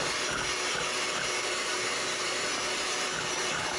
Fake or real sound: real